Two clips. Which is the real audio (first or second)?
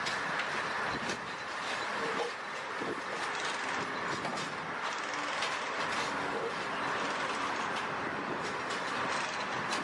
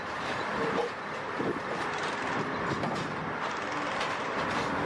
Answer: first